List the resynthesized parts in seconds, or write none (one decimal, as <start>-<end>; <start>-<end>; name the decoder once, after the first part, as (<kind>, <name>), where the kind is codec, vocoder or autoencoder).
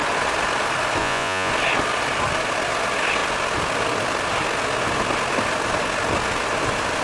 1.0-1.5 (vocoder, Vocos)